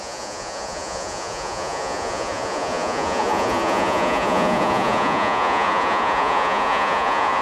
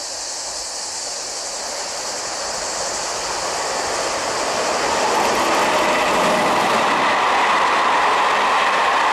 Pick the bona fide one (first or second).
second